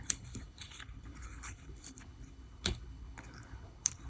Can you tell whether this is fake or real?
fake